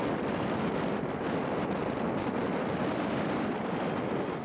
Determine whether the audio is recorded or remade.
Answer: recorded